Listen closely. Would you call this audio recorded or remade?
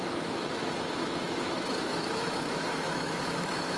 remade